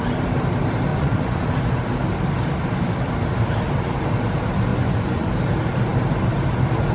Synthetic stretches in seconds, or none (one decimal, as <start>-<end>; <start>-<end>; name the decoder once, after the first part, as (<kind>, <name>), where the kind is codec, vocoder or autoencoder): 0.9-1.5 (vocoder, Vocos); 4.7-5.3